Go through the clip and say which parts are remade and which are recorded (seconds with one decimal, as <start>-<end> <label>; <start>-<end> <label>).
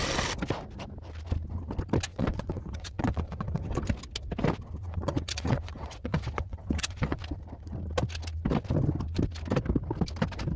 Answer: 0.0-2.1 recorded; 2.1-3.8 remade; 3.8-4.8 recorded; 4.8-7.2 remade; 7.2-10.6 recorded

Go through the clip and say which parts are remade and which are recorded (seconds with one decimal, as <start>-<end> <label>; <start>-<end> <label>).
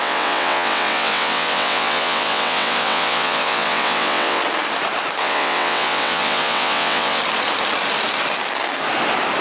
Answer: 0.0-4.4 remade; 4.4-5.2 recorded; 5.2-7.2 remade; 7.2-9.4 recorded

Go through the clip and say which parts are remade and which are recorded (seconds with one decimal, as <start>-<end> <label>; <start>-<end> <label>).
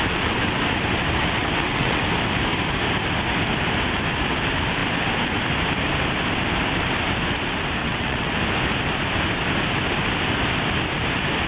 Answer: 0.0-1.4 recorded; 1.4-2.0 remade; 2.0-7.8 recorded; 7.8-8.3 remade; 8.3-11.5 recorded